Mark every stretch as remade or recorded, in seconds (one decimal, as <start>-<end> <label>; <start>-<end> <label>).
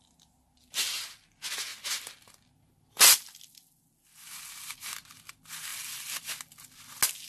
0.0-5.7 recorded; 5.7-6.3 remade; 6.3-7.3 recorded